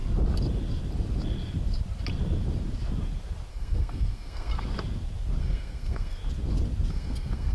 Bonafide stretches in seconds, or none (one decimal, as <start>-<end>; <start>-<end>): 0.0-3.5; 4.5-5.4; 6.2-6.9